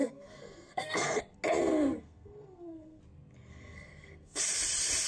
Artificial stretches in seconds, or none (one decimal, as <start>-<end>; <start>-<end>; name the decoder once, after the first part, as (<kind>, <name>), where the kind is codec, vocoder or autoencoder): 0.0-1.2 (codec, SNAC); 1.6-3.0; 3.5-4.4